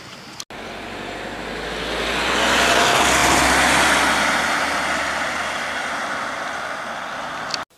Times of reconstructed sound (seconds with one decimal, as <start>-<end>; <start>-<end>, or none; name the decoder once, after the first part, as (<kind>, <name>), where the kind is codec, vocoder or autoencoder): none